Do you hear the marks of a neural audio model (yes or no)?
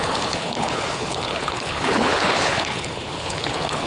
yes